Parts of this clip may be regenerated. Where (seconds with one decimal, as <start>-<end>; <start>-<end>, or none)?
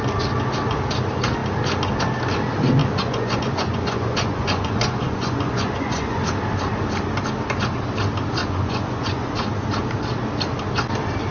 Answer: 2.8-6.2; 8.4-9.3